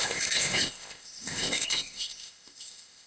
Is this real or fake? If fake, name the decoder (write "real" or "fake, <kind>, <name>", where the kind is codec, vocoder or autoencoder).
fake, codec, ZipCodec